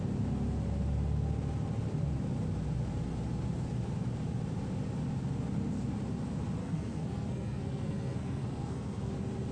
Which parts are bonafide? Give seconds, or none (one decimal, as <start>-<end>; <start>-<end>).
0.0-6.6; 9.1-9.5